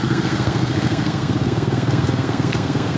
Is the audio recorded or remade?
remade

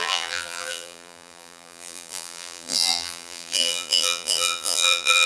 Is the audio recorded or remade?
remade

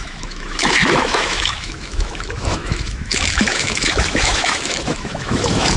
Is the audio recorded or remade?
remade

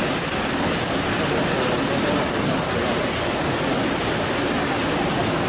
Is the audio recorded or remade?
recorded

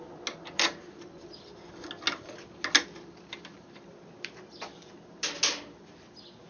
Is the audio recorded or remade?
recorded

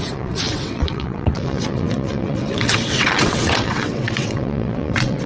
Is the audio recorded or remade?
remade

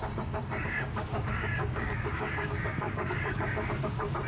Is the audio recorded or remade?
remade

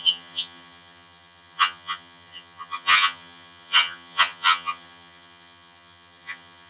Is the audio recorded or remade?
remade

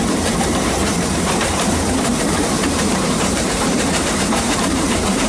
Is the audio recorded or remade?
remade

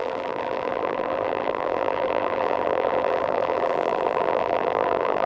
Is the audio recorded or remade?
remade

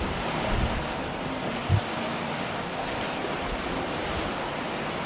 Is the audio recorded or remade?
recorded